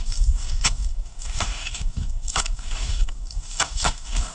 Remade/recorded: remade